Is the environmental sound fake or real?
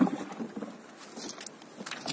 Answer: real